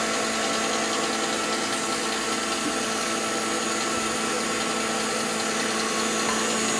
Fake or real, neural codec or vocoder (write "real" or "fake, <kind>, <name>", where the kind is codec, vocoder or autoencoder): real